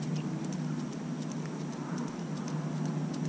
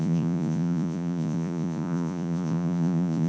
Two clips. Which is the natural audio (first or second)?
first